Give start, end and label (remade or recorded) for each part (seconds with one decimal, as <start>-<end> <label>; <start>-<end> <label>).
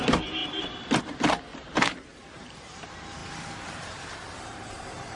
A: 0.0-1.5 recorded; 1.5-2.6 remade; 2.6-3.2 recorded; 3.2-5.2 remade